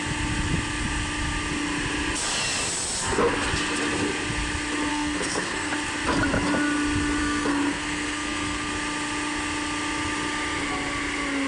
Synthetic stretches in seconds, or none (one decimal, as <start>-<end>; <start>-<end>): 4.9-5.7; 7.2-8.7

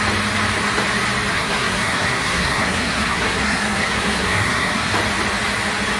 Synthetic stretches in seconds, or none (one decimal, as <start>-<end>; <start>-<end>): 1.3-4.9

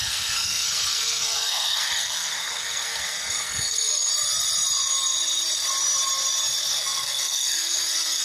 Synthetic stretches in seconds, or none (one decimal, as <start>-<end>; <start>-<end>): 0.0-4.1; 6.7-8.2

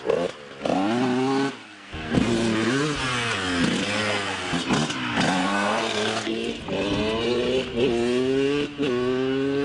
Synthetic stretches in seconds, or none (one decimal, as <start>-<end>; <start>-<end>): 1.6-2.3; 5.4-6.6

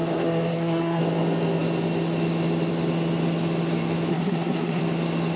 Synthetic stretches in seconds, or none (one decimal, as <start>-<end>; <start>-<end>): 0.0-1.0; 4.1-4.8